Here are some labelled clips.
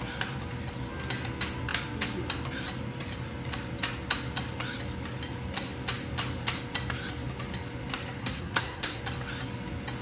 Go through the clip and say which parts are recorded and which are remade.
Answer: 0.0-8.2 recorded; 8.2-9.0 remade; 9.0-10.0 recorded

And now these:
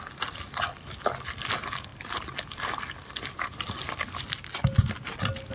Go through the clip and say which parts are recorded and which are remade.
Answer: 0.0-5.5 recorded

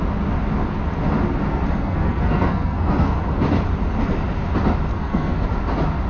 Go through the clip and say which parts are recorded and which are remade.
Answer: 0.0-1.5 recorded; 1.5-3.2 remade; 3.2-4.9 recorded; 4.9-5.4 remade; 5.4-6.1 recorded

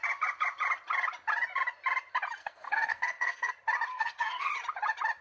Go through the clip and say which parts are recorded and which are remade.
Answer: 0.0-2.4 recorded; 2.4-3.5 remade; 3.5-3.9 recorded; 3.9-4.5 remade; 4.5-5.2 recorded

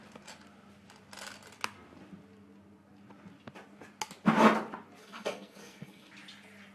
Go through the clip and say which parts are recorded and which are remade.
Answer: 0.0-5.0 recorded; 5.0-6.1 remade; 6.1-6.7 recorded

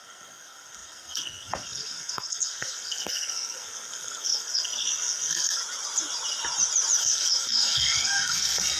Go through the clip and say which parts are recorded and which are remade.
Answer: 0.0-5.6 remade; 5.6-7.0 recorded; 7.0-8.8 remade

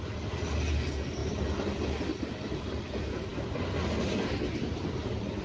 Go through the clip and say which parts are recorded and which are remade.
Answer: 0.0-5.4 recorded